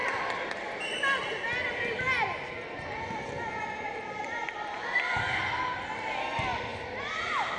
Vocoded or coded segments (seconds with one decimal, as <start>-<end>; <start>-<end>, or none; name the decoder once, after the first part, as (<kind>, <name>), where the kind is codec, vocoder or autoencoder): none